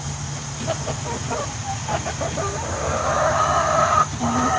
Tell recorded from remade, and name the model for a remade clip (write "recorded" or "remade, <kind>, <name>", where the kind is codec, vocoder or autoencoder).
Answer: recorded